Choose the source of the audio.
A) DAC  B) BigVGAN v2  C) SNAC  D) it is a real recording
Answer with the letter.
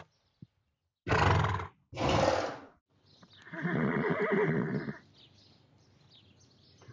D